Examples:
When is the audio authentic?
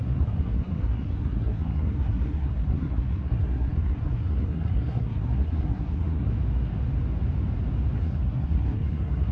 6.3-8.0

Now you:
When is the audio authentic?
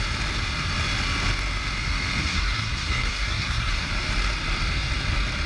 0.0-2.2; 3.9-5.5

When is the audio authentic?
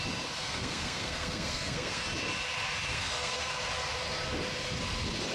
0.0-0.4; 2.0-2.9; 3.5-5.3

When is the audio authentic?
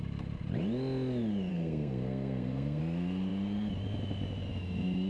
0.0-1.5; 2.8-5.1